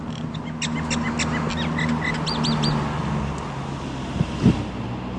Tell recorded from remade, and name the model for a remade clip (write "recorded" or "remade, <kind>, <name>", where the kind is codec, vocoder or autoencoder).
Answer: recorded